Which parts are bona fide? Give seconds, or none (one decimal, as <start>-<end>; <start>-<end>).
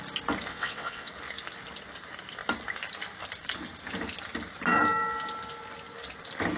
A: 0.0-0.5; 1.1-6.6